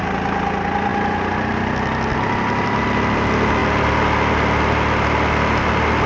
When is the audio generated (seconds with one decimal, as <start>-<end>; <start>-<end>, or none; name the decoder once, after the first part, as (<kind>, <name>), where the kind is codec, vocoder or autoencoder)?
none